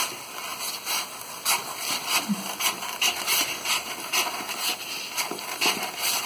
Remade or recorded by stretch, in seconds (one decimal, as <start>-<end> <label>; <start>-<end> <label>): 0.0-0.5 recorded; 0.5-2.3 remade; 2.3-3.3 recorded; 3.3-6.3 remade